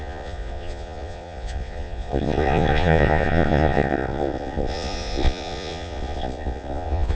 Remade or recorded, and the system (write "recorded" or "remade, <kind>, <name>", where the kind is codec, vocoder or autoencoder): remade, vocoder, Vocos